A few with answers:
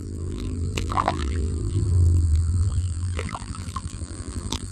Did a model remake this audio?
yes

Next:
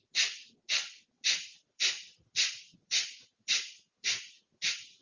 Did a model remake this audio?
no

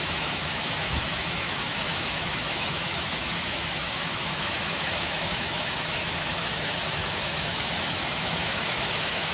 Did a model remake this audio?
yes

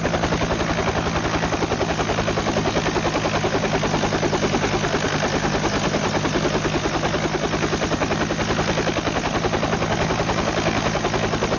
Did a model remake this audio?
no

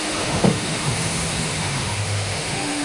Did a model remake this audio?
yes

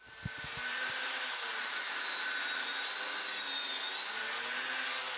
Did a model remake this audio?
no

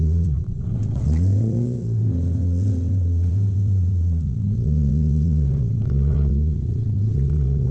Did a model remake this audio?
yes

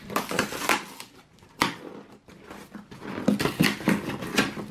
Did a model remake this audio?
no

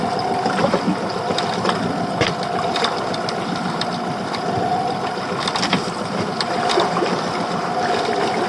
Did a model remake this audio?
no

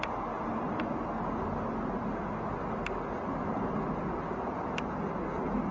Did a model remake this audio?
no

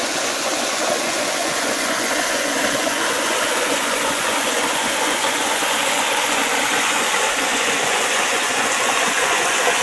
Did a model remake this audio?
yes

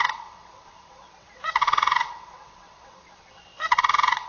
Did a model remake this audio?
yes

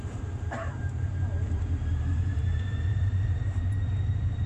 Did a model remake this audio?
yes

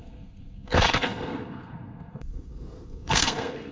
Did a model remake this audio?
yes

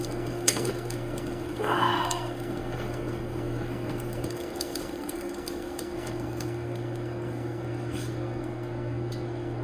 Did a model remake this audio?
yes